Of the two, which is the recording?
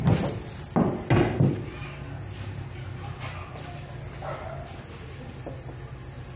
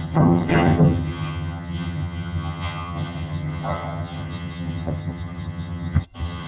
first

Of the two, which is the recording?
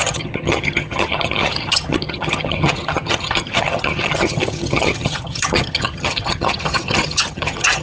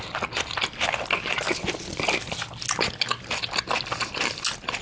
second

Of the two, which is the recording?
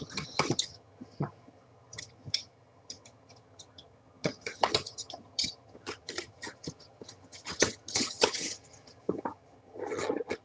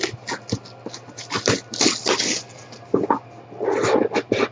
second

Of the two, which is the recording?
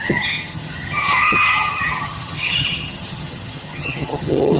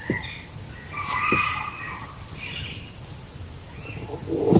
second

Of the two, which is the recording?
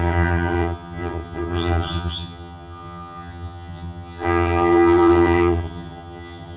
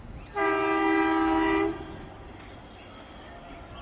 second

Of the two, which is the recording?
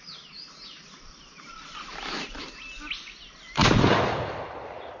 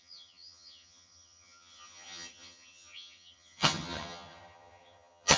first